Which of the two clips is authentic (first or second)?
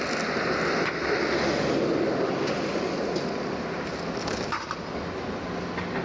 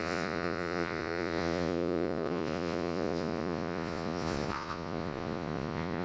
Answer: first